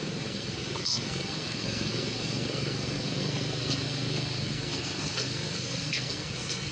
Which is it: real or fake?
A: fake